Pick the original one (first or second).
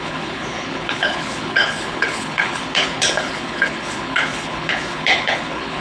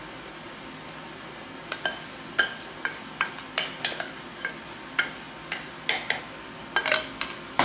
second